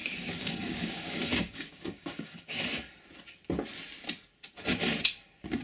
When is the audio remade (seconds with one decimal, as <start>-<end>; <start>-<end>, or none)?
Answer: 0.0-2.7